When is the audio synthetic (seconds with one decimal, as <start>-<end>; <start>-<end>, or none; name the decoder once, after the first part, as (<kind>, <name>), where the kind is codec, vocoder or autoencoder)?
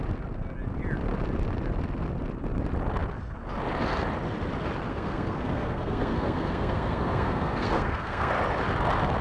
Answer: 4.9-8.3 (codec, SNAC)